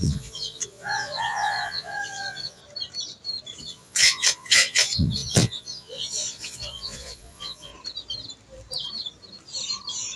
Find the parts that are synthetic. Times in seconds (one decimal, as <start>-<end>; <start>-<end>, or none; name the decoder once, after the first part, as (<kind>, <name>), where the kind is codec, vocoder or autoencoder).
0.0-2.6 (vocoder, Vocos); 3.6-7.7